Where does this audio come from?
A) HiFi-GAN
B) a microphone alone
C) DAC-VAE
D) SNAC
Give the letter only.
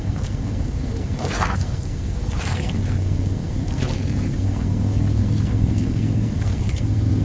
D